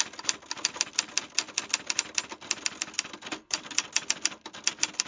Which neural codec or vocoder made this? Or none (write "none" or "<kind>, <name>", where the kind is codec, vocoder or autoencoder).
none